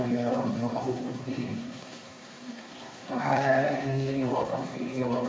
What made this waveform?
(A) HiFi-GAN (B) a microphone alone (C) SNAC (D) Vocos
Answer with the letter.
C